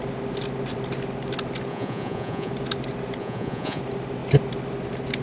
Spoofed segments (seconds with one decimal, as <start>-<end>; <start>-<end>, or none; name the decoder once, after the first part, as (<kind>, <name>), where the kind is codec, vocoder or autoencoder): 1.7-2.5 (vocoder, Vocos); 3.2-3.8